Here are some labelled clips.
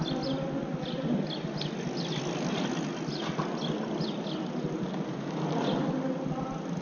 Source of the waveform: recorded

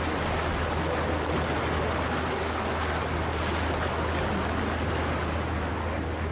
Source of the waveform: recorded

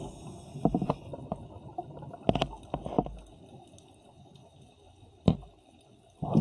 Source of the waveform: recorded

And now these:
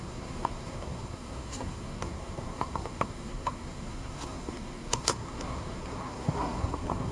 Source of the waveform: remade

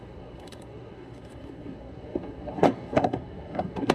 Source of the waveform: remade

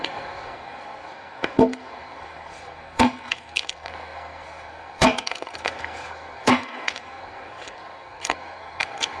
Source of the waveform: remade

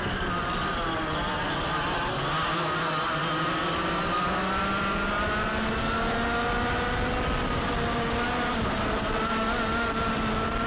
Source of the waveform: recorded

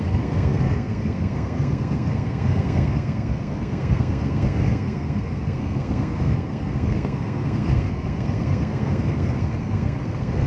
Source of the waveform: remade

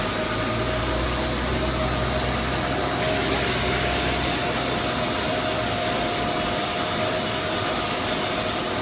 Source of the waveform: recorded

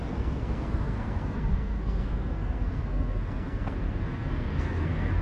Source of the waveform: remade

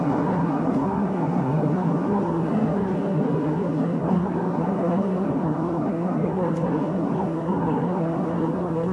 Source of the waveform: remade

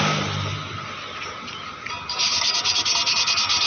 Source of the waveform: recorded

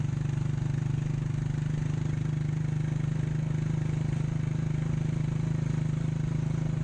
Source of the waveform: recorded